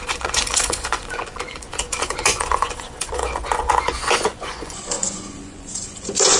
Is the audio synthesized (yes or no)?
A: yes